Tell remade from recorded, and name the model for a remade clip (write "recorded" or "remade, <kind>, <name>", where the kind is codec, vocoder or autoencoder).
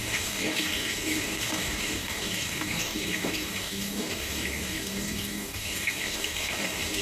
remade, codec, DAC